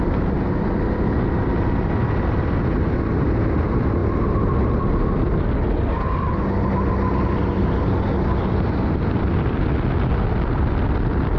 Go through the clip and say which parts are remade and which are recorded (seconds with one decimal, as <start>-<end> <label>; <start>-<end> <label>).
0.0-11.4 recorded